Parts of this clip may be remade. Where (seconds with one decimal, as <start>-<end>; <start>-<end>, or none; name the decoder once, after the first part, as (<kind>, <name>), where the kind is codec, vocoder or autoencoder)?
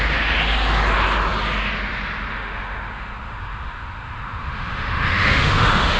2.3-6.0 (autoencoder, DAC-VAE)